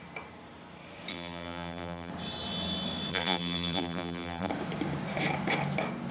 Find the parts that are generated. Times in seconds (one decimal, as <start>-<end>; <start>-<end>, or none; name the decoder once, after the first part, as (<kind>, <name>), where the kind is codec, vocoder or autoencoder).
1.1-2.1 (vocoder, BigVGAN v2); 3.1-4.5